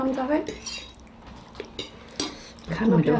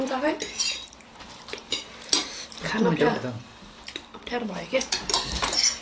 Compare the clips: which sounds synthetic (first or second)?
second